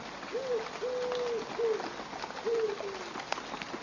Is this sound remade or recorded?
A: recorded